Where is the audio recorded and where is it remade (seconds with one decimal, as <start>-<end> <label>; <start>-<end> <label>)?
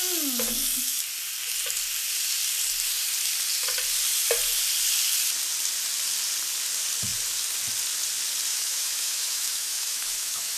0.0-8.5 recorded; 8.5-10.6 remade